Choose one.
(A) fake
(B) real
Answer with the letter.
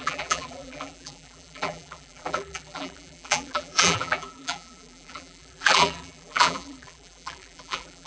A